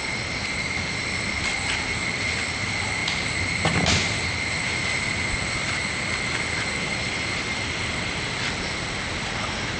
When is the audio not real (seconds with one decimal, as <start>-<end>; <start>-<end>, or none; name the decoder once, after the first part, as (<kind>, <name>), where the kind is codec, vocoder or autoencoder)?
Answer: 0.0-3.0 (vocoder, BigVGAN v2); 4.5-5.8; 7.0-9.8